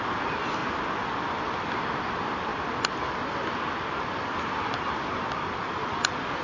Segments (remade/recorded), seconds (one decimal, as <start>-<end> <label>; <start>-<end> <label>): 0.0-6.4 recorded